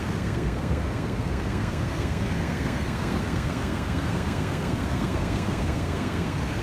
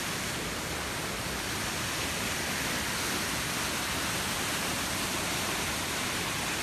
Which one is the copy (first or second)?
first